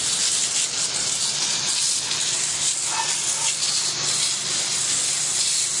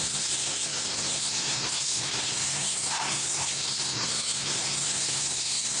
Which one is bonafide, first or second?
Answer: first